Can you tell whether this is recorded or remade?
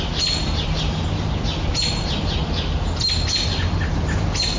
recorded